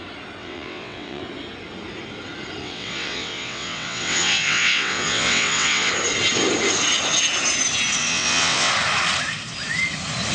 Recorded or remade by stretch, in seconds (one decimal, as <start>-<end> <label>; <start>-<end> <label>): 0.0-0.4 recorded; 0.4-1.2 remade; 1.2-2.6 recorded; 2.6-5.9 remade; 5.9-8.0 recorded; 8.0-8.7 remade; 8.7-10.3 recorded